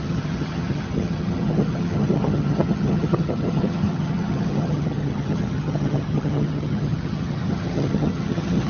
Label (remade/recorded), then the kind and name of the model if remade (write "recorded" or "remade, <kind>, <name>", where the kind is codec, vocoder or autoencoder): remade, vocoder, HiFi-GAN